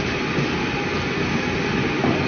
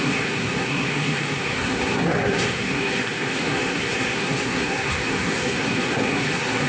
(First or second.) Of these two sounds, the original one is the first